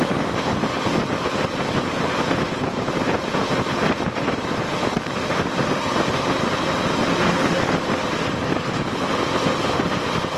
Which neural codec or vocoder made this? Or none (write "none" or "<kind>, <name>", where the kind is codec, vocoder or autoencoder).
none